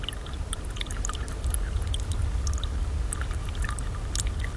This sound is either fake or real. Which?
real